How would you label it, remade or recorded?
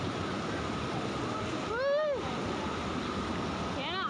recorded